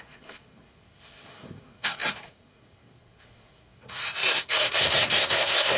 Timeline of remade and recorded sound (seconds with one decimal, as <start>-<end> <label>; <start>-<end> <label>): 0.0-5.8 remade